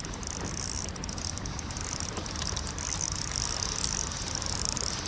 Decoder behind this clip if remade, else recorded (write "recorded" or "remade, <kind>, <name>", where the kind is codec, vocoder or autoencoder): recorded